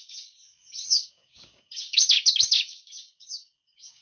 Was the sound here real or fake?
fake